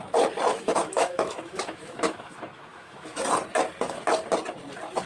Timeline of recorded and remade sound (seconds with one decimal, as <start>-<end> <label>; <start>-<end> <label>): 0.0-0.5 recorded; 0.5-3.2 remade; 3.2-5.1 recorded